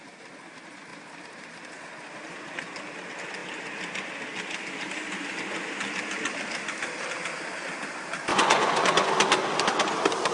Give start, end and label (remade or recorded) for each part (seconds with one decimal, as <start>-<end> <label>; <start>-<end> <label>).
0.0-8.3 recorded; 8.3-9.1 remade; 9.1-10.3 recorded